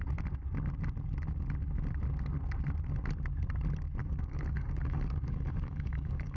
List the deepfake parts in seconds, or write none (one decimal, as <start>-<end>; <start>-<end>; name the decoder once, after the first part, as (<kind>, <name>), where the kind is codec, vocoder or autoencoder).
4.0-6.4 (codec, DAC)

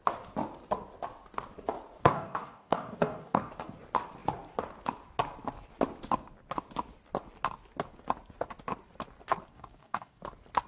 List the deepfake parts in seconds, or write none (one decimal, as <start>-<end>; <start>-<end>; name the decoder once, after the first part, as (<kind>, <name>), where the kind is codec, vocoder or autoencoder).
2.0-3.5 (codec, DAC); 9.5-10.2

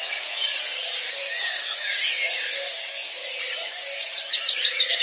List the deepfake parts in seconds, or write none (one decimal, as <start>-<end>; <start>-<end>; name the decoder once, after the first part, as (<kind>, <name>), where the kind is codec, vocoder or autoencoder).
0.0-1.9 (codec, DAC); 2.7-3.2; 3.7-5.0